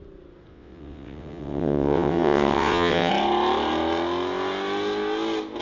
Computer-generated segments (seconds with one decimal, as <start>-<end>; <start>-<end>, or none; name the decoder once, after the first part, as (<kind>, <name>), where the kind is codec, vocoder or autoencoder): 0.5-3.1 (vocoder, WaveNeXt)